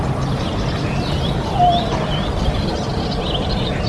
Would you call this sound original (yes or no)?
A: yes